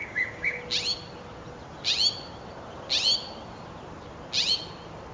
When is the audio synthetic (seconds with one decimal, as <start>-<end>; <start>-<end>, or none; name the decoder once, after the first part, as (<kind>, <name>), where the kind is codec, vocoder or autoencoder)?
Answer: 0.0-0.6 (codec, DAC)